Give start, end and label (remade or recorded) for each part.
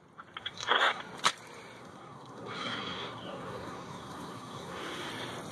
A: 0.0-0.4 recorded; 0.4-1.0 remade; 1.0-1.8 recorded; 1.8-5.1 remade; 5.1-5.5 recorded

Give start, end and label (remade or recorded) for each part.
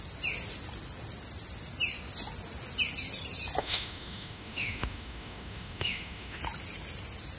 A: 0.0-3.6 recorded; 3.6-6.4 remade; 6.4-7.4 recorded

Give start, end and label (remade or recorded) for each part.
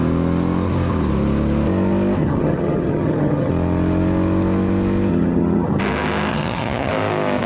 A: 0.0-2.2 recorded; 2.2-3.5 remade; 3.5-5.1 recorded; 5.1-5.8 remade; 5.8-6.3 recorded; 6.3-6.9 remade; 6.9-7.5 recorded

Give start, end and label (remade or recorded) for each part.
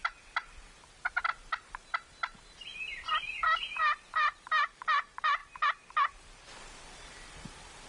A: 0.0-5.4 remade; 5.4-6.1 recorded; 6.1-7.9 remade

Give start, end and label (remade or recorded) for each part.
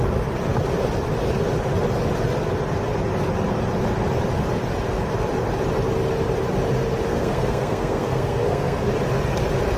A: 0.0-7.1 recorded; 7.1-8.9 remade; 8.9-9.8 recorded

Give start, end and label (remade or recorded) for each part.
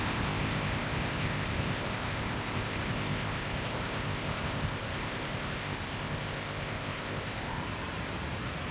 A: 0.0-7.6 remade; 7.6-8.7 recorded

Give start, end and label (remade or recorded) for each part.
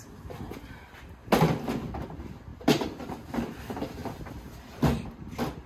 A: 0.0-5.7 recorded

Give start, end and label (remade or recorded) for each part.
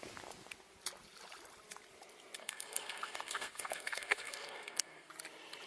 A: 0.0-2.4 recorded; 2.4-5.1 remade; 5.1-5.7 recorded